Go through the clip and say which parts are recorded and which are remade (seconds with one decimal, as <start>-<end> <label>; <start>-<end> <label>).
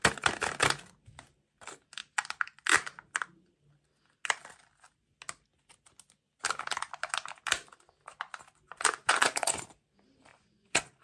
0.0-9.0 recorded; 9.0-9.6 remade; 9.6-10.3 recorded; 10.3-11.0 remade